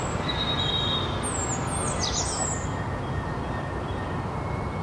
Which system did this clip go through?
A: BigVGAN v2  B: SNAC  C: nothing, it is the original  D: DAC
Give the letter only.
C